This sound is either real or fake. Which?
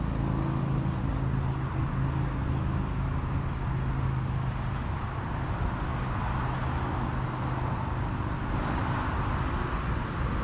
real